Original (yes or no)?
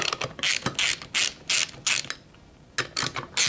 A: yes